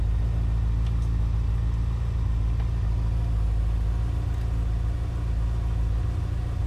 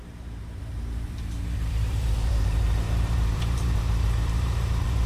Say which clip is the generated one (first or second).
second